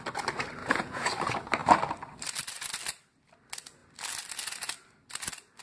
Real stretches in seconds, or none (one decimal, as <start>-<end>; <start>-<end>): 0.0-0.6; 1.1-5.6